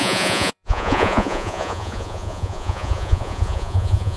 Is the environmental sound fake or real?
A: fake